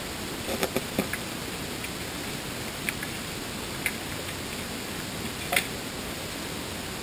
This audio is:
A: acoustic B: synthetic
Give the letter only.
A